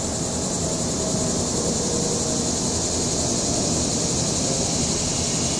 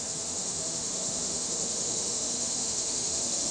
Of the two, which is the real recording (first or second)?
first